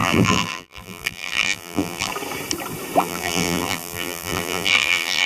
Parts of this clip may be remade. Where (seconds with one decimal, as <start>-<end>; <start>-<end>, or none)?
0.0-2.1; 3.0-5.3